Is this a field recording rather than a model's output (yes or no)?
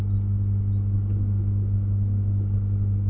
yes